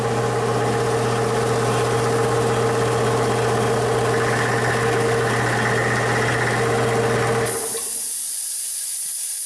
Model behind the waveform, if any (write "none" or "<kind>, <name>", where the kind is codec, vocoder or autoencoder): none